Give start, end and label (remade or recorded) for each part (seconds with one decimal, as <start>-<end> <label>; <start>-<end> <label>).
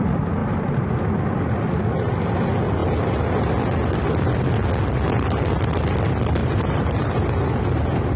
0.0-6.4 recorded; 6.4-7.2 remade; 7.2-8.2 recorded